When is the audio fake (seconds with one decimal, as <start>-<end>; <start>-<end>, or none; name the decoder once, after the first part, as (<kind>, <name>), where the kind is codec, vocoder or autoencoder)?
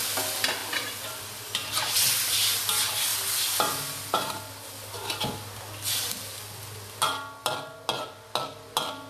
0.6-1.2 (vocoder, BigVGAN v2)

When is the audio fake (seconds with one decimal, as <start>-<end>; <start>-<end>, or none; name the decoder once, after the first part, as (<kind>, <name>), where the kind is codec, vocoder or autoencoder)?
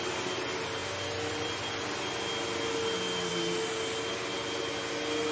none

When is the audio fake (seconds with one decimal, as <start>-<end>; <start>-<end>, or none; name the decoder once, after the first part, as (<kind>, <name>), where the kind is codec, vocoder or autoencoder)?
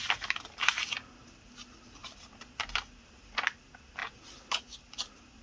4.0-4.6 (vocoder, BigVGAN v2)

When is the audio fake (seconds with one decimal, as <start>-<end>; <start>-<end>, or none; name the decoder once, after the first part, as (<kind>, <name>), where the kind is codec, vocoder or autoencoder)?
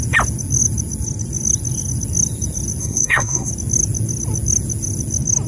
2.8-3.5 (codec, SNAC)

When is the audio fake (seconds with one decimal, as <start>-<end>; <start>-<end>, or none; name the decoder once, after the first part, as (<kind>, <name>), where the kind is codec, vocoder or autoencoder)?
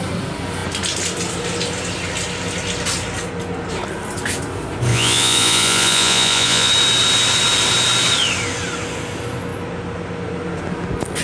4.9-6.7 (vocoder, Vocos)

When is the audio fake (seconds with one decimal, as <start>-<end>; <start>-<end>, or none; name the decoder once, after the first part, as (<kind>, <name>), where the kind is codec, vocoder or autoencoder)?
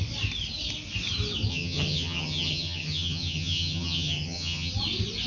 1.5-4.7 (vocoder, HiFi-GAN)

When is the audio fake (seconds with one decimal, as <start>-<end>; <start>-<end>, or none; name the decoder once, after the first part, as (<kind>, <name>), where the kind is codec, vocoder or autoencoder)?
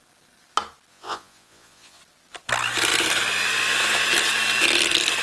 0.9-2.0 (vocoder, Vocos)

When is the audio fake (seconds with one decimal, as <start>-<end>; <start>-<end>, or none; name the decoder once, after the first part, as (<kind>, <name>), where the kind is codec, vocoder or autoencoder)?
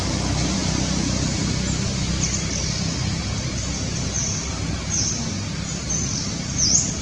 none